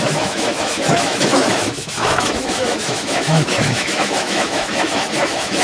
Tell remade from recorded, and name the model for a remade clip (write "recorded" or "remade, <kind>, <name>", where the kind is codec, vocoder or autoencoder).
remade, autoencoder, DAC-VAE